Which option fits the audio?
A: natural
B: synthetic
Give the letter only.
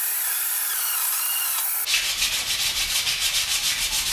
A